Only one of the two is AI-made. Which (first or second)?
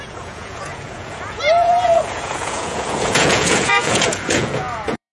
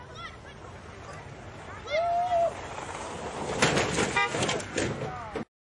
first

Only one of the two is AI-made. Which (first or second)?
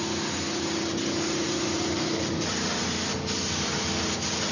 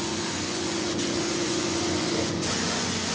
second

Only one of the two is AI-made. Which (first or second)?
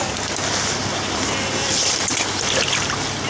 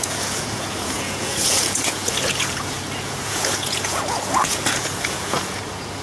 second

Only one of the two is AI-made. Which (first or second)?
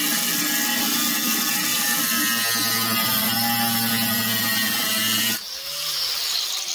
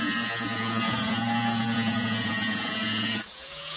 second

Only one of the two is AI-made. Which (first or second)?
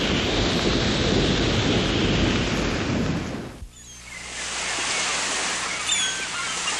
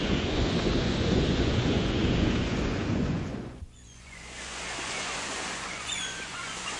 second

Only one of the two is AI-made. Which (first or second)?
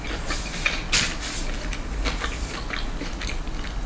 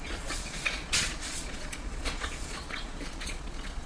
second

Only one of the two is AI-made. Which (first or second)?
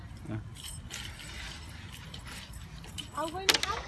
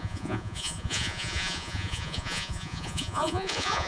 second